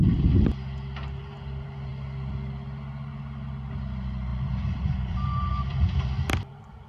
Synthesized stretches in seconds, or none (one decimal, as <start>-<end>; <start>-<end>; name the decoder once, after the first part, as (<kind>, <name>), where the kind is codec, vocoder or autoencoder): 4.3-6.5 (vocoder, BigVGAN v2)

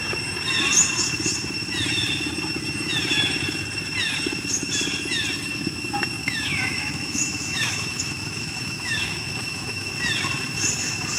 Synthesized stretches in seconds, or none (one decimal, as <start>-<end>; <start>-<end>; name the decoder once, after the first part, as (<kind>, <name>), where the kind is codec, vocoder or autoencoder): 6.2-9.9 (autoencoder, DAC-VAE)